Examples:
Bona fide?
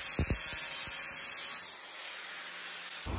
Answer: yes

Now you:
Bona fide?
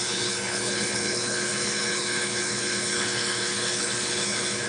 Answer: no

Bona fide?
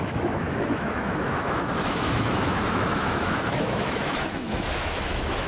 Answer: no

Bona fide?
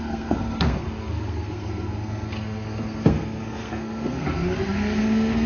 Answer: no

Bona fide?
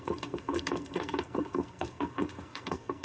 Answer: no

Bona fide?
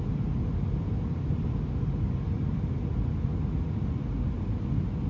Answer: yes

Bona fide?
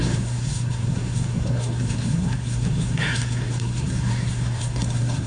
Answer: no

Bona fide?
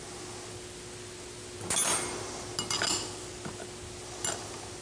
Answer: yes